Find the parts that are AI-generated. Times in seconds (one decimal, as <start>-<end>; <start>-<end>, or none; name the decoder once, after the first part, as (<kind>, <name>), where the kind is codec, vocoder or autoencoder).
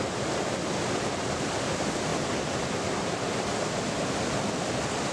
none